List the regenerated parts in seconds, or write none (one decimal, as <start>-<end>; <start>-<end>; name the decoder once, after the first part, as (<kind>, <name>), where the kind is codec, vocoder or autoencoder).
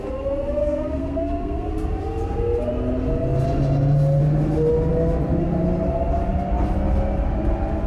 0.6-1.7 (codec, SNAC)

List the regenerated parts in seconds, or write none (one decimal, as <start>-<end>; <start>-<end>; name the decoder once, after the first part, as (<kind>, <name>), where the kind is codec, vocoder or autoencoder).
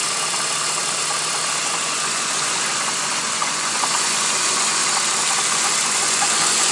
1.6-4.8 (vocoder, Vocos); 5.5-6.7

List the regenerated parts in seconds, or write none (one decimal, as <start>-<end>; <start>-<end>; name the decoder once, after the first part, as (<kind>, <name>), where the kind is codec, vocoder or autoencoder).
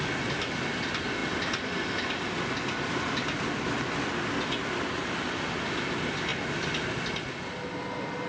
none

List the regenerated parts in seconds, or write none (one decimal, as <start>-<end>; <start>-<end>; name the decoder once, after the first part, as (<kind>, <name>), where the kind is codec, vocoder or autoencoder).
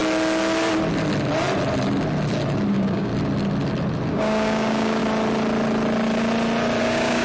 2.7-3.1 (codec, DAC); 4.1-5.0; 6.8-7.2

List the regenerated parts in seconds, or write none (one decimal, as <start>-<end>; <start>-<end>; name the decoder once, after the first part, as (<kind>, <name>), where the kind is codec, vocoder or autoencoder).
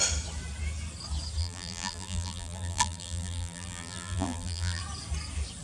1.4-4.8 (vocoder, BigVGAN v2)